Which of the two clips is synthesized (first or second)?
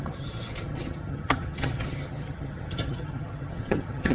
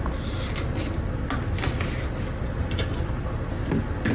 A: first